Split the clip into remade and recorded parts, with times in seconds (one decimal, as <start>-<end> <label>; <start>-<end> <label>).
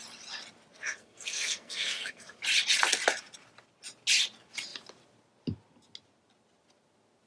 0.0-0.7 recorded; 0.7-2.4 remade; 2.4-7.3 recorded